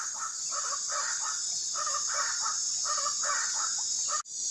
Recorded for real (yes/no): yes